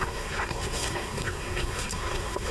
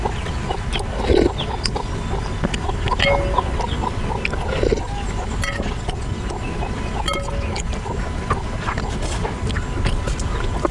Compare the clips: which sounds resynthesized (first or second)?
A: first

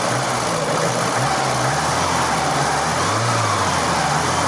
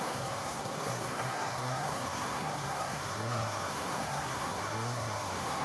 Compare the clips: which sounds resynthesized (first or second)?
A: second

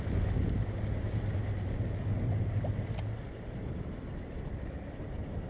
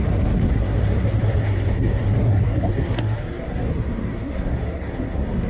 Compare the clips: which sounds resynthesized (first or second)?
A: second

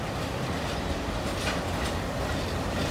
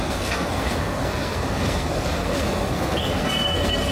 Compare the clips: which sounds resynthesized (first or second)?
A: second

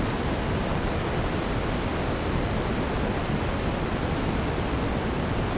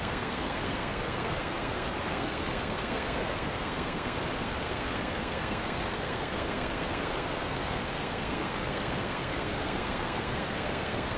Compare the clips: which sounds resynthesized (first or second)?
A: second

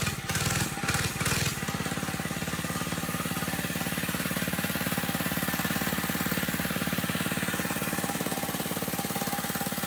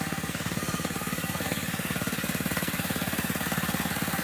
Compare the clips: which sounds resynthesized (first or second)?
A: second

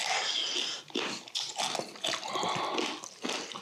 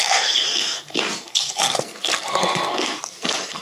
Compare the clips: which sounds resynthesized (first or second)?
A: second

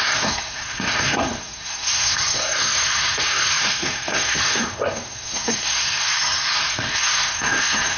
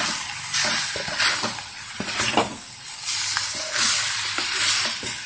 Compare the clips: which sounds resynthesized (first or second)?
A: first